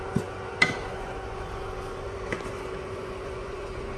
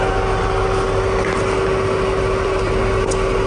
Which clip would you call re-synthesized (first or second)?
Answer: first